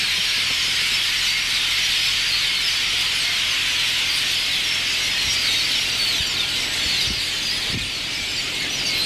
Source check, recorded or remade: recorded